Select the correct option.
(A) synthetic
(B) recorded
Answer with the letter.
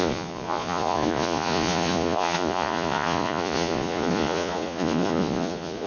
A